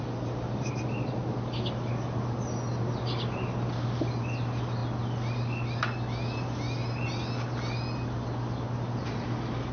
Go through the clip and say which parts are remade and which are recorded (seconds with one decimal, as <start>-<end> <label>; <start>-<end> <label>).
0.0-9.7 recorded